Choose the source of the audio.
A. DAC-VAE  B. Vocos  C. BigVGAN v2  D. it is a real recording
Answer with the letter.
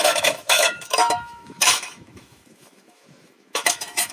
A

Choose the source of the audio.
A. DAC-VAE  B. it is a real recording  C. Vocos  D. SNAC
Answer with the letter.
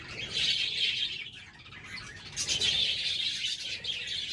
B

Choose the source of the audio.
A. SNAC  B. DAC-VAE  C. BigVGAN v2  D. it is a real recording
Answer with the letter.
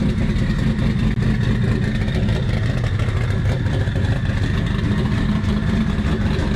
D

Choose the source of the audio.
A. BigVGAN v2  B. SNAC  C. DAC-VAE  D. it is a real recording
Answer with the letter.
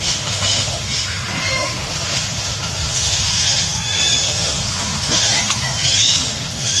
C